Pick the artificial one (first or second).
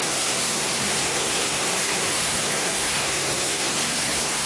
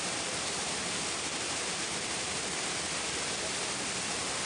first